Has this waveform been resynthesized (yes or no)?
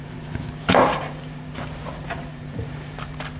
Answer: yes